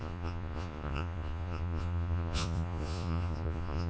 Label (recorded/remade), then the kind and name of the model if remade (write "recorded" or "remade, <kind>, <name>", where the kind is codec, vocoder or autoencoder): remade, vocoder, Vocos